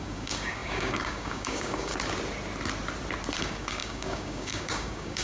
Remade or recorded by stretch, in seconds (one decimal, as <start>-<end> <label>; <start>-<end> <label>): 0.0-1.9 remade; 1.9-3.4 recorded; 3.4-5.2 remade